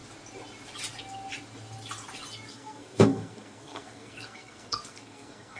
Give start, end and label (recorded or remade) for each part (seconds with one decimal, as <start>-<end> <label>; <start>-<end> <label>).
0.0-2.5 recorded; 2.5-5.6 remade